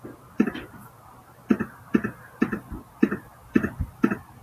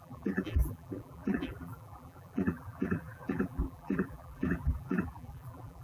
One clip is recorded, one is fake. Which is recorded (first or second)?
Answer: first